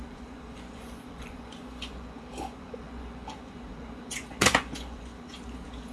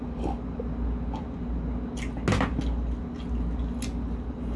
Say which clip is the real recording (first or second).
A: second